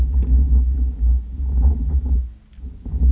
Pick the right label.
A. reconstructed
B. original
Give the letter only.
B